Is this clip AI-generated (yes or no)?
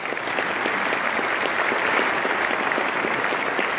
no